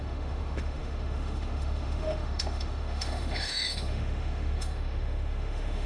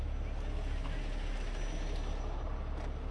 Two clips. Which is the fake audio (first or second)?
first